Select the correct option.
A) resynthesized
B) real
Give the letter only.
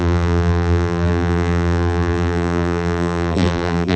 A